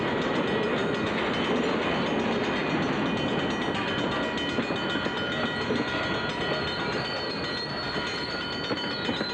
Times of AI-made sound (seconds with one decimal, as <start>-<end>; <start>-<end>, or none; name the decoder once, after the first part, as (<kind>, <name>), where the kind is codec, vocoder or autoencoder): none